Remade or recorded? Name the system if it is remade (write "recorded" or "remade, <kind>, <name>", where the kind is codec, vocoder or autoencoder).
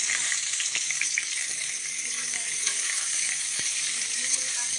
remade, codec, DAC